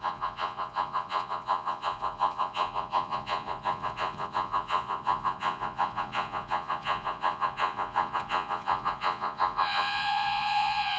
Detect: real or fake fake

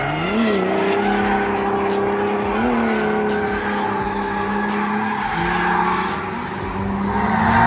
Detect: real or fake real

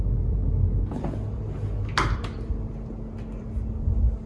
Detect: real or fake real